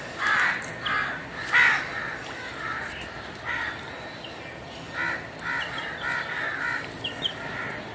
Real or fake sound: real